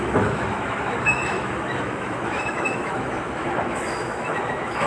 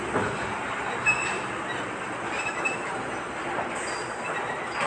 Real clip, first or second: second